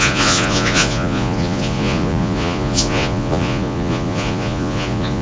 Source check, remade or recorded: remade